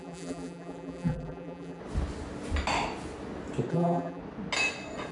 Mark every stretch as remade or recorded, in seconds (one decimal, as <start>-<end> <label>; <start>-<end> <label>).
0.0-1.8 remade; 1.8-3.7 recorded; 3.7-4.2 remade; 4.2-5.1 recorded